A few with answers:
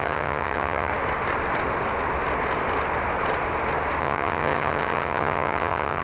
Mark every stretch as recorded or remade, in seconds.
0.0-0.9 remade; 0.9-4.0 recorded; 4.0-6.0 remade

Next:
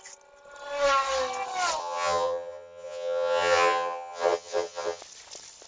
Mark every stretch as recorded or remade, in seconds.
0.0-1.8 recorded; 1.8-5.0 remade; 5.0-5.7 recorded

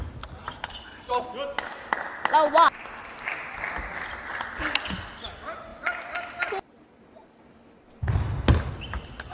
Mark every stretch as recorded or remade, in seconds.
0.0-9.3 recorded

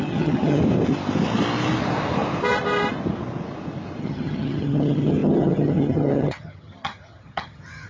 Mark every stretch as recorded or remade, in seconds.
0.0-0.6 remade; 0.6-4.0 recorded; 4.0-7.9 remade